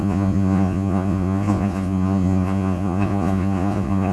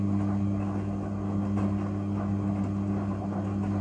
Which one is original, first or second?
second